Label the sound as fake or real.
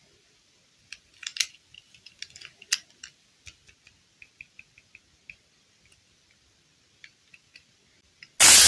real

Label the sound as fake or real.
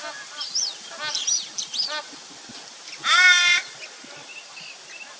real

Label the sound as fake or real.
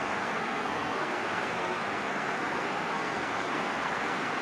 fake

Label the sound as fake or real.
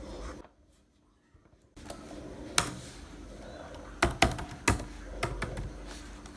real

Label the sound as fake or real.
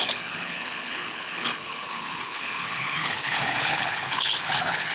fake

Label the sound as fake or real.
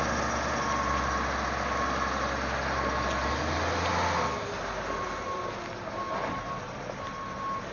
real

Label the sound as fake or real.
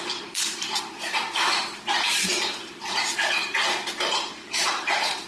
fake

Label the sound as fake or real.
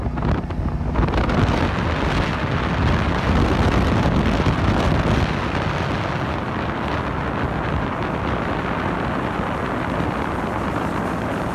real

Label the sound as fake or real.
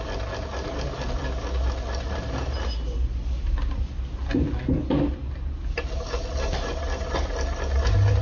real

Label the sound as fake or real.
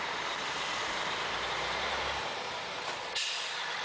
fake